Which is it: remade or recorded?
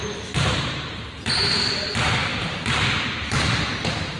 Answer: remade